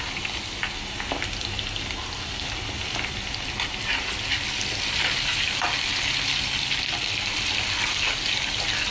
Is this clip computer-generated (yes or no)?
no